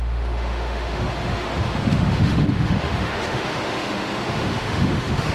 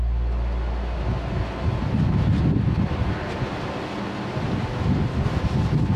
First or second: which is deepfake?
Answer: first